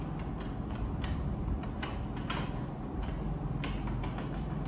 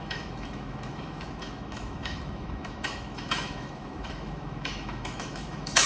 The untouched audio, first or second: first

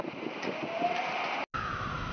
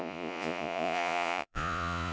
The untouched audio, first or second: first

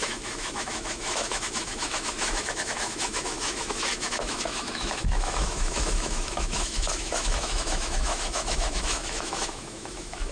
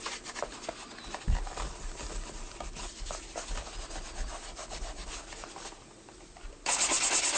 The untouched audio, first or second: second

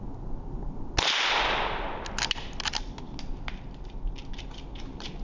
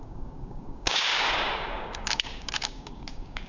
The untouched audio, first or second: first